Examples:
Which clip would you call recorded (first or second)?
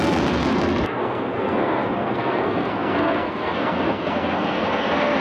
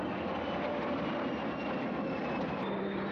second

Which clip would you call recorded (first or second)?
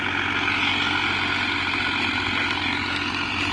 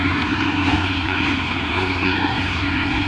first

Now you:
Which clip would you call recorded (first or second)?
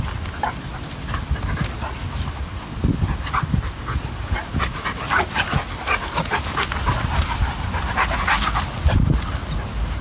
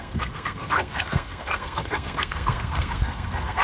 first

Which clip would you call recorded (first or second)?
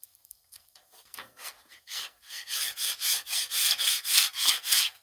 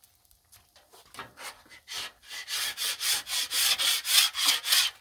second